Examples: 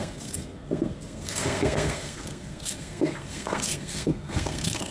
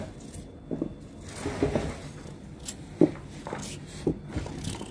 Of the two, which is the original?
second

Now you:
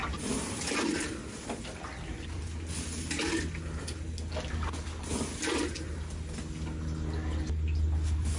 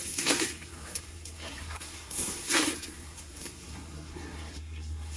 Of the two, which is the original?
first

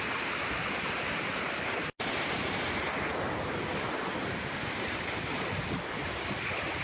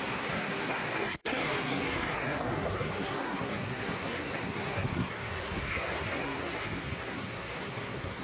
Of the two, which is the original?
first